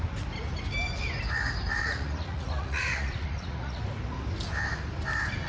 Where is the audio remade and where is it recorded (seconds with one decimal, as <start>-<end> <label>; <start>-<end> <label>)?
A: 0.0-1.8 recorded; 1.8-3.8 remade; 3.8-5.5 recorded